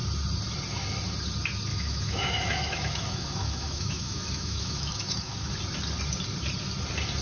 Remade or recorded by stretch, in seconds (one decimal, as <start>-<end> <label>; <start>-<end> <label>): 0.0-1.7 recorded; 1.7-5.5 remade; 5.5-7.2 recorded